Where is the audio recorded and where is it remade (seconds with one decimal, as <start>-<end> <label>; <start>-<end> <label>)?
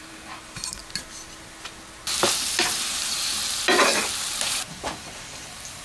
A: 0.0-0.8 remade; 0.8-2.8 recorded; 2.8-3.4 remade; 3.4-4.3 recorded; 4.3-5.8 remade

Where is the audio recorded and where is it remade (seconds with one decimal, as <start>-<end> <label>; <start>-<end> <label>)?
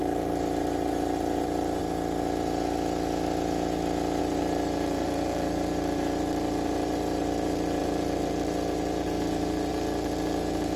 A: 0.0-1.8 remade; 1.8-4.2 recorded; 4.2-10.8 remade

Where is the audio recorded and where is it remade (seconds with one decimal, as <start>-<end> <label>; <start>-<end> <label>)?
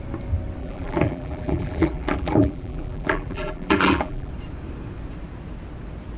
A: 0.0-0.6 recorded; 0.6-4.3 remade; 4.3-6.2 recorded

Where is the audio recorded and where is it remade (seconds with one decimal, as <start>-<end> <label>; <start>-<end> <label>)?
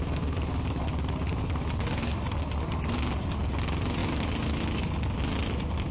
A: 0.0-5.9 recorded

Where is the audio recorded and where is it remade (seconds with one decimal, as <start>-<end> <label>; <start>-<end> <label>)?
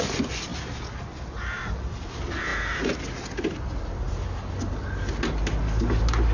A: 0.0-0.5 recorded; 0.5-1.6 remade; 1.6-6.3 recorded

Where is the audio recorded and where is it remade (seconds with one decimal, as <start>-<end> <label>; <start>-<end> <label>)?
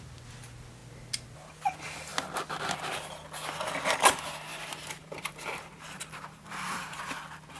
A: 0.0-4.5 recorded; 4.5-7.0 remade; 7.0-7.6 recorded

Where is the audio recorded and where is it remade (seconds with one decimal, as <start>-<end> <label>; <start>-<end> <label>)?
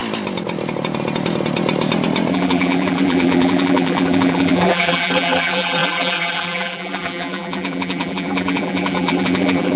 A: 0.0-2.3 recorded; 2.3-9.8 remade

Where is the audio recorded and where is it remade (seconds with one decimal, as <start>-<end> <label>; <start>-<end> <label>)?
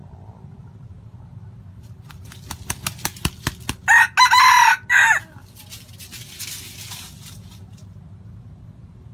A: 0.0-3.5 remade; 3.5-9.1 recorded